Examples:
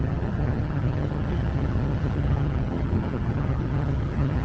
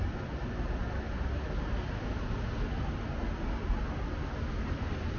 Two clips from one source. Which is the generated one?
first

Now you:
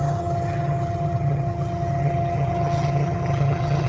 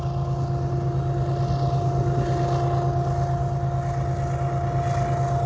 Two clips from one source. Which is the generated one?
first